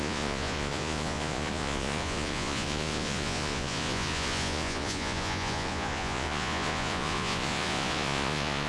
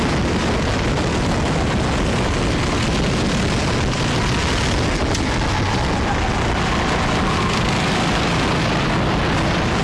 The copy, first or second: first